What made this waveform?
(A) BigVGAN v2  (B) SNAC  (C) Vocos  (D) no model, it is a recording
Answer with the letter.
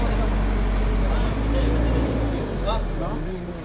D